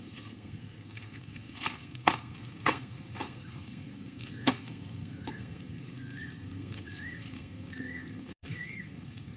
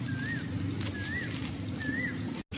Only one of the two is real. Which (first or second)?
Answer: second